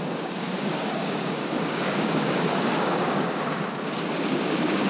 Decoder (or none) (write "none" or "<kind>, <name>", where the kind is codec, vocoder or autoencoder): codec, DAC